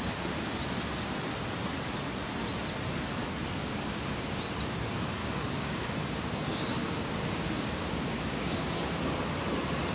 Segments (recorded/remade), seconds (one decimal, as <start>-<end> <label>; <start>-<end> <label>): 0.0-3.6 recorded; 3.6-4.4 remade; 4.4-5.2 recorded; 5.2-9.2 remade; 9.2-9.9 recorded